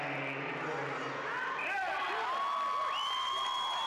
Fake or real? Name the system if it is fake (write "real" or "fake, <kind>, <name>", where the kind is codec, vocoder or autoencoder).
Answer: real